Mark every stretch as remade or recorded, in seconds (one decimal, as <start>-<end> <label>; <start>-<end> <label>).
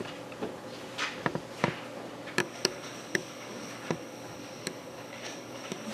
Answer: 0.0-2.4 recorded; 2.4-5.9 remade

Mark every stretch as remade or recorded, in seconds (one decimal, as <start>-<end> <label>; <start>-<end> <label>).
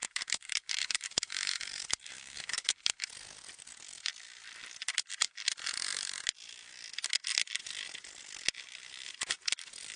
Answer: 0.0-3.1 remade; 3.1-10.0 recorded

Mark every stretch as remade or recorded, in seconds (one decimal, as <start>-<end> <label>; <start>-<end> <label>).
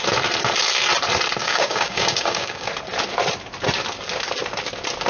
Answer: 0.0-1.4 recorded; 1.4-2.7 remade; 2.7-5.1 recorded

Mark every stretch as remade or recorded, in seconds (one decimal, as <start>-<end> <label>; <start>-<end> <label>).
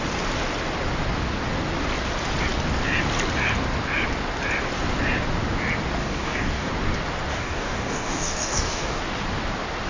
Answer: 0.0-6.0 recorded; 6.0-6.7 remade; 6.7-7.3 recorded; 7.3-9.0 remade; 9.0-9.9 recorded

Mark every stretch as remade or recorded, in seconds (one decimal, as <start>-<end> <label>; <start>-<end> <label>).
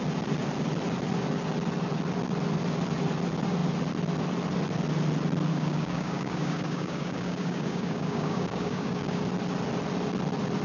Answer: 0.0-5.5 recorded; 5.5-9.2 remade; 9.2-10.6 recorded